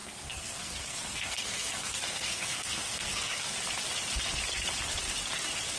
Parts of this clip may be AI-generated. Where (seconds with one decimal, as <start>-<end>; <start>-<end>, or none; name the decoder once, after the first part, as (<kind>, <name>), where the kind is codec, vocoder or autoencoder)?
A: 0.0-3.5 (codec, SNAC)